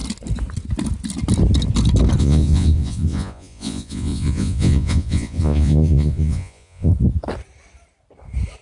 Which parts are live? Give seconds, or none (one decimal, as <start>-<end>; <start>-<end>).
0.0-2.2; 6.9-8.6